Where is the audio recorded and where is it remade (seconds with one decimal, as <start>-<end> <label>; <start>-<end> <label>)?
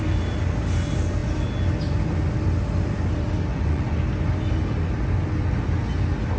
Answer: 0.0-3.5 recorded; 3.5-4.0 remade; 4.0-6.4 recorded